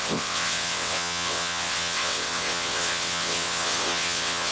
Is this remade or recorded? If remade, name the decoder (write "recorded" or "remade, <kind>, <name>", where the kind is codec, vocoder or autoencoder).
remade, vocoder, WaveNeXt